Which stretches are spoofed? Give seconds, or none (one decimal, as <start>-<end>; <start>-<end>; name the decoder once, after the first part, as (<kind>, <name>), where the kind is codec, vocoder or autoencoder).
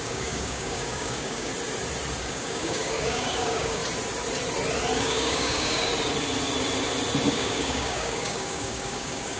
0.0-1.5 (codec, DAC); 2.2-3.8; 5.0-5.9; 7.3-9.4